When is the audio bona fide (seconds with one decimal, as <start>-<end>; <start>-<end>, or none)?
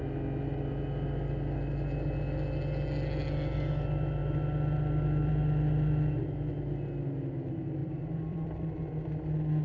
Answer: 0.0-7.8; 8.8-9.6